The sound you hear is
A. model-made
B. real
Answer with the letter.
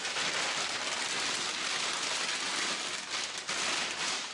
B